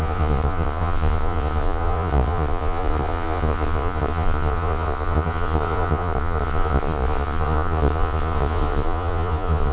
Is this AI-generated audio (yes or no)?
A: yes